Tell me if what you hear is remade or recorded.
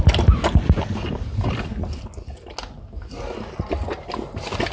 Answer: recorded